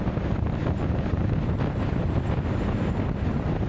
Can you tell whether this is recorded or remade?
recorded